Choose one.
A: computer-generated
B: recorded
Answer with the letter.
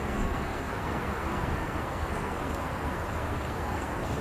A